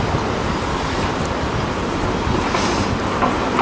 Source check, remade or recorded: recorded